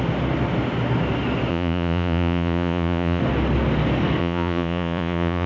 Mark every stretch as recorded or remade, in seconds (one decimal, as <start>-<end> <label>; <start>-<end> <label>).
0.0-1.5 recorded; 1.5-3.2 remade; 3.2-4.2 recorded; 4.2-5.5 remade